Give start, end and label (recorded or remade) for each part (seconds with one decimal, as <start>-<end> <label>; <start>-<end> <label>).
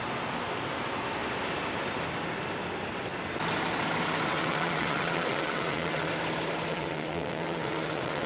0.0-4.3 recorded; 4.3-6.1 remade; 6.1-6.7 recorded; 6.7-8.3 remade